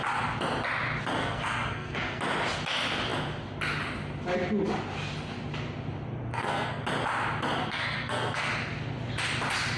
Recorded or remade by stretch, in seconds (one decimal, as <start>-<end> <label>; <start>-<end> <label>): 0.0-1.2 recorded; 1.2-2.2 remade; 2.2-6.3 recorded; 6.3-6.8 remade; 6.8-7.6 recorded; 7.6-8.5 remade; 8.5-9.8 recorded